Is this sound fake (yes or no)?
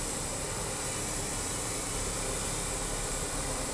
yes